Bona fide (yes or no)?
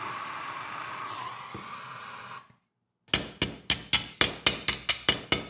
yes